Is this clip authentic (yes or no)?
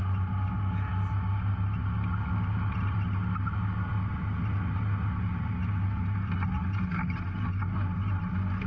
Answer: yes